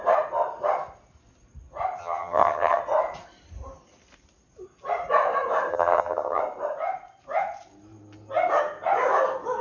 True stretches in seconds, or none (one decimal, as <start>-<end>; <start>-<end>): 0.0-2.0; 2.8-5.7; 6.4-9.6